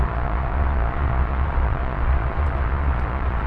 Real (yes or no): no